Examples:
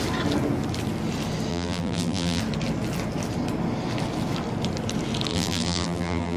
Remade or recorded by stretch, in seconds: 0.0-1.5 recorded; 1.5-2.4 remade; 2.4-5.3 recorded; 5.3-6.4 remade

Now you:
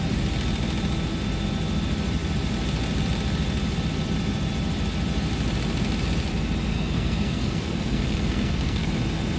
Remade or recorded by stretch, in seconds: 0.0-6.7 recorded; 6.7-8.9 remade; 8.9-9.4 recorded

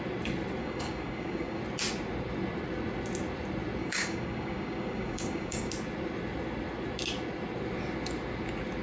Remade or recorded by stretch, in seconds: 0.0-0.6 recorded; 0.6-1.6 remade; 1.6-3.8 recorded; 3.8-5.7 remade; 5.7-8.8 recorded

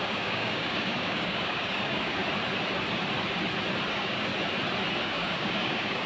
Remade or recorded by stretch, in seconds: 0.0-2.2 remade; 2.2-3.9 recorded; 3.9-4.3 remade; 4.3-5.0 recorded; 5.0-6.1 remade

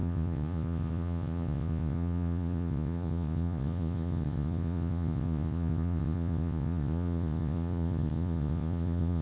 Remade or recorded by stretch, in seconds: 0.0-9.2 remade

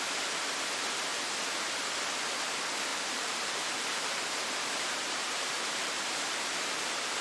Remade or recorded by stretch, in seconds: 0.0-2.9 recorded; 2.9-7.2 remade

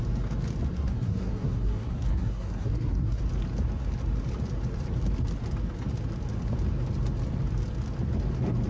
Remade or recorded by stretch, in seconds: 0.0-0.7 recorded; 0.7-3.2 remade; 3.2-8.7 recorded